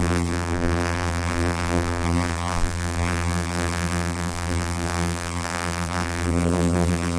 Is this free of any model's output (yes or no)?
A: no